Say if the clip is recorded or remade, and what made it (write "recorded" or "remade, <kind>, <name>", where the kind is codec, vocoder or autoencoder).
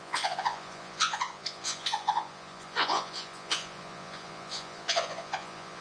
remade, vocoder, Vocos